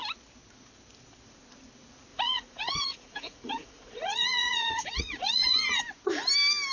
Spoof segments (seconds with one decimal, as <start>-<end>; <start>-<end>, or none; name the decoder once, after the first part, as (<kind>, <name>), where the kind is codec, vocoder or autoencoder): 2.1-5.8 (vocoder, Vocos)